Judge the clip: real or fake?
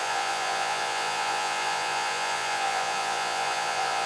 fake